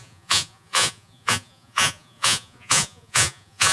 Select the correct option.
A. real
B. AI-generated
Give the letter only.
B